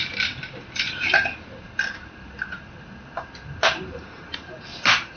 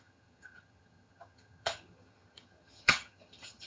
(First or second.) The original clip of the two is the first